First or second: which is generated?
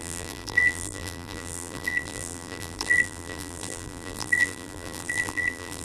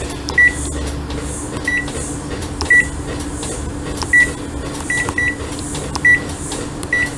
first